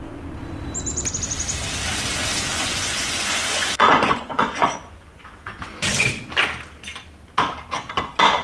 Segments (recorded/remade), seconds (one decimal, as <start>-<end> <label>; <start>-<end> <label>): 0.0-2.5 recorded; 2.5-6.2 remade; 6.2-8.4 recorded